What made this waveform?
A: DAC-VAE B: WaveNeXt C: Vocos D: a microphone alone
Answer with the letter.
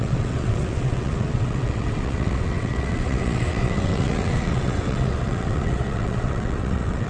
B